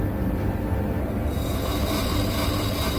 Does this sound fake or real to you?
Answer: real